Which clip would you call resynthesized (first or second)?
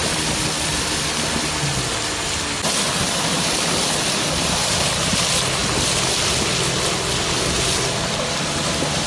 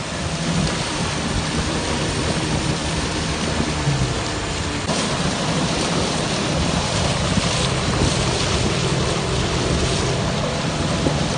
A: second